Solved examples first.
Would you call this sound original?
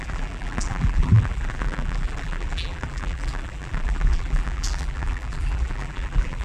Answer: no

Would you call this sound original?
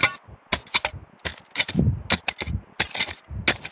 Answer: yes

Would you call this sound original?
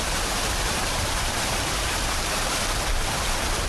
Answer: no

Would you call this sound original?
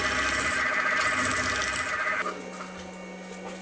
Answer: yes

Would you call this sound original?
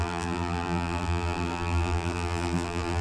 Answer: no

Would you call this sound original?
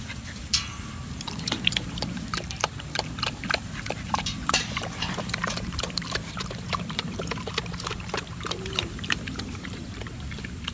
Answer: no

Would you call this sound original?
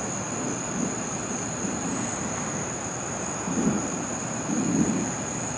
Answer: no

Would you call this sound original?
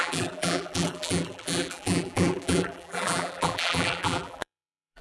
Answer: no